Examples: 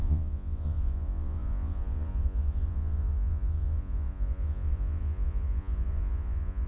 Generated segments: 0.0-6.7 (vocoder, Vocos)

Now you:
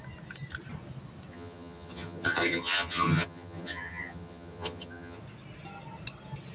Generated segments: 1.3-5.2 (vocoder, HiFi-GAN)

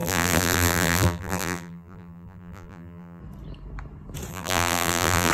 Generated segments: 0.0-3.2 (vocoder, BigVGAN v2); 4.3-5.3

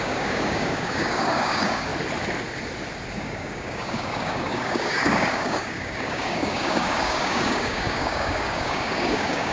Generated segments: 0.0-1.9 (codec, DAC); 3.1-9.5